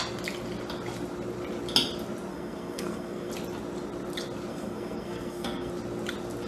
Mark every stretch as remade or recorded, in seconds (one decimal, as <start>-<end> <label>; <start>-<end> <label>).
0.0-2.3 recorded; 2.3-3.3 remade; 3.3-4.5 recorded; 4.5-5.7 remade; 5.7-6.5 recorded